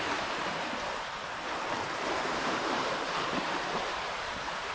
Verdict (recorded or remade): remade